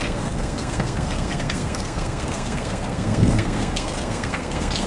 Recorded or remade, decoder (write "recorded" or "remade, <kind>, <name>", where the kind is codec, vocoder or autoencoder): remade, codec, SNAC